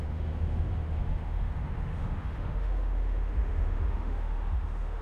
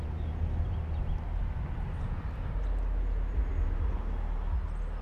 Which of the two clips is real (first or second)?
second